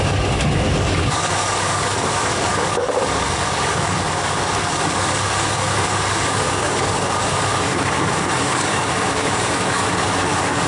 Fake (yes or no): yes